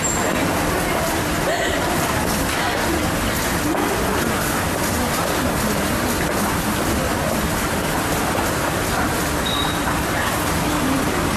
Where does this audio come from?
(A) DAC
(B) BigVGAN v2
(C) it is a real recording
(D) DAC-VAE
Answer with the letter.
C